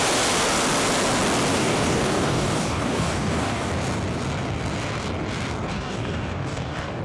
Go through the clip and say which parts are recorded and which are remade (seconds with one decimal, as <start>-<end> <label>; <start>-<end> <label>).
0.0-1.5 recorded; 1.5-3.7 remade; 3.7-5.7 recorded; 5.7-7.0 remade